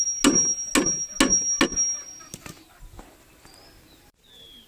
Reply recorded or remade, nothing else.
recorded